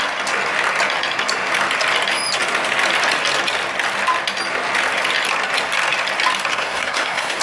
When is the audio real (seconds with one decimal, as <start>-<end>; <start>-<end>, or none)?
0.0-6.5